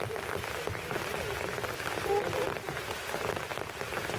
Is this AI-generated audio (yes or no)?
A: no